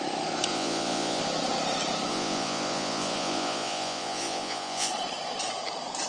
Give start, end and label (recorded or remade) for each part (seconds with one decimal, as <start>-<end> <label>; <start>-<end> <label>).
0.0-0.5 recorded; 0.5-1.2 remade; 1.2-2.1 recorded; 2.1-4.9 remade; 4.9-6.1 recorded